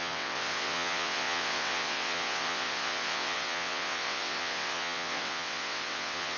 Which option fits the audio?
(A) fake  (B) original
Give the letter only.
A